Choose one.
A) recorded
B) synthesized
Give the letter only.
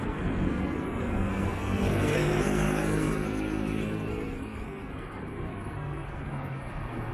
B